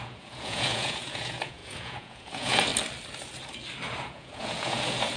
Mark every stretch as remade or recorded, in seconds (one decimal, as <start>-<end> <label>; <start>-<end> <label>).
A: 0.0-2.7 remade; 2.7-4.0 recorded; 4.0-5.2 remade